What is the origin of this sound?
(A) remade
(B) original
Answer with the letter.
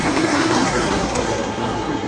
A